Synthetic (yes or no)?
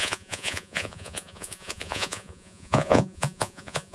yes